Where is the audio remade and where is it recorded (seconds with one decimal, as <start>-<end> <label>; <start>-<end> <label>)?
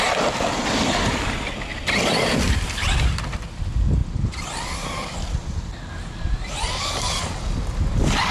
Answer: 0.0-8.3 recorded